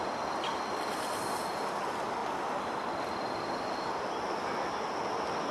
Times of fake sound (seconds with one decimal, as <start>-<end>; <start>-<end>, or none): none